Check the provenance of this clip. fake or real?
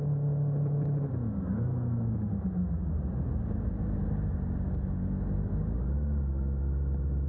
real